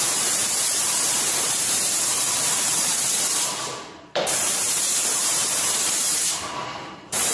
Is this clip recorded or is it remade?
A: remade